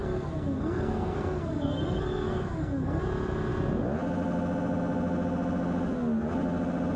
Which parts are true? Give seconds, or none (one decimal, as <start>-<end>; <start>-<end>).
3.0-7.0